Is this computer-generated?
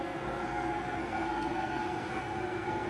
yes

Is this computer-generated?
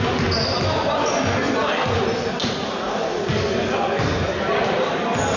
no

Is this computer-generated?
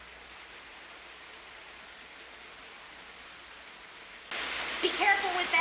no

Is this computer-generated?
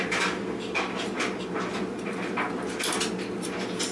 no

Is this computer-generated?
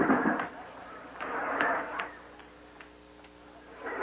no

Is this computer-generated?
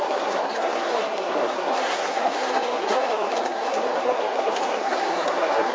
yes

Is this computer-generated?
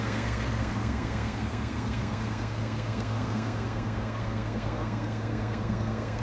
yes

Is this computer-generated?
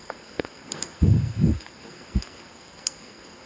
yes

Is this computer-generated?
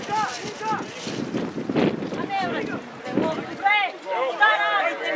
no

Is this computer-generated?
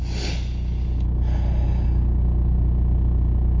no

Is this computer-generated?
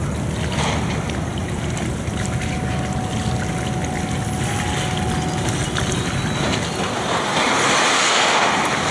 no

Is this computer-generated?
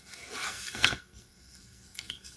yes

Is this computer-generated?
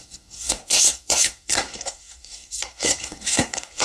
yes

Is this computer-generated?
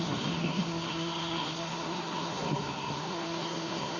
yes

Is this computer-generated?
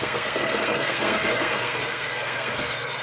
yes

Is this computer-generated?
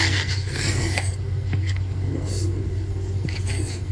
yes